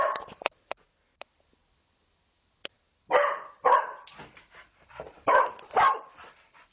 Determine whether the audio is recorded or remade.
recorded